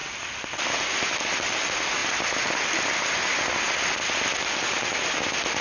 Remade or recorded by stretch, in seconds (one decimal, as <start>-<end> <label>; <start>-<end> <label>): 0.0-5.6 recorded